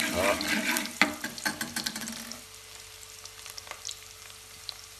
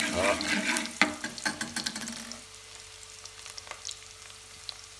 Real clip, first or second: second